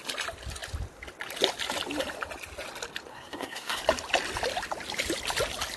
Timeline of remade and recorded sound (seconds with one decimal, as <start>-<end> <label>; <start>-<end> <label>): 0.0-3.1 recorded; 3.1-3.8 remade; 3.8-5.8 recorded